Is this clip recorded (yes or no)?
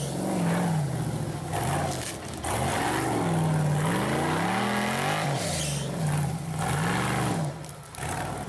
yes